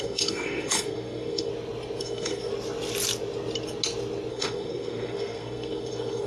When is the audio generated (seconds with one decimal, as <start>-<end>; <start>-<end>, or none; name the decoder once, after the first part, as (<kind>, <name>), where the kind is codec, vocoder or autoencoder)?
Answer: 0.0-1.5 (codec, SNAC); 2.0-2.5; 4.3-6.3